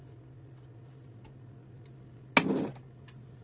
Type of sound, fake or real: real